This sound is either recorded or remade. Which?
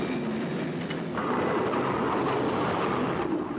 recorded